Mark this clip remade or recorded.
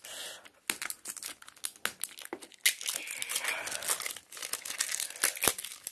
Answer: recorded